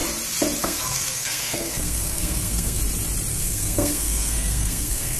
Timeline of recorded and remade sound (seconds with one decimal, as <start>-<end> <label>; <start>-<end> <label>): 0.0-0.6 recorded; 0.6-2.8 remade; 2.8-3.3 recorded; 3.3-5.2 remade